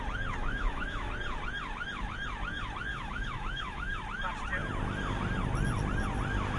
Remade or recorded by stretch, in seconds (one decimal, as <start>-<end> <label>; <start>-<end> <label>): 0.0-0.4 recorded; 0.4-1.1 remade; 1.1-2.9 recorded; 2.9-4.0 remade; 4.0-6.6 recorded